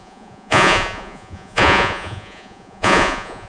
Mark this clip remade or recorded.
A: remade